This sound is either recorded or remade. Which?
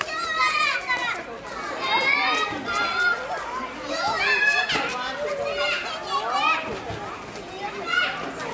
recorded